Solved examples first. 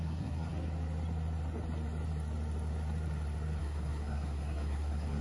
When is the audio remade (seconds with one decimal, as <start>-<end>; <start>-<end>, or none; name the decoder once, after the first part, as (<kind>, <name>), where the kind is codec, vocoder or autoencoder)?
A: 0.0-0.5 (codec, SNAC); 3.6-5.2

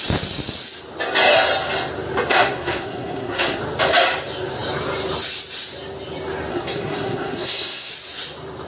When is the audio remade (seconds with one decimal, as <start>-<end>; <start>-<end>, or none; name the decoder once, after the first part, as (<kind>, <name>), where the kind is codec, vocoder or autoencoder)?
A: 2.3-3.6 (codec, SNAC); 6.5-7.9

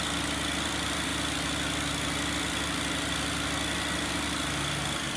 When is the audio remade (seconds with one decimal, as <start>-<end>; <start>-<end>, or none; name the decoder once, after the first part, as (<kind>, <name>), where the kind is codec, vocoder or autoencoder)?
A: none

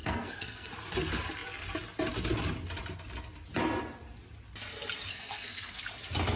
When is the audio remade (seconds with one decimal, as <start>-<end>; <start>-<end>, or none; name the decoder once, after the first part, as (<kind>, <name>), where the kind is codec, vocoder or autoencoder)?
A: 0.0-0.7 (codec, SNAC); 5.1-5.8